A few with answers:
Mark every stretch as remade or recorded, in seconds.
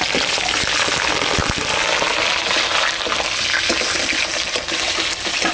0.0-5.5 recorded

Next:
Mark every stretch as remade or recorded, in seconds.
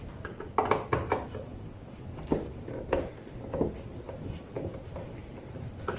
0.0-6.0 recorded